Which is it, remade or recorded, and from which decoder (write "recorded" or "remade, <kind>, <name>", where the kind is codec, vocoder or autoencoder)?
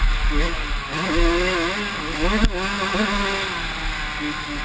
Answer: recorded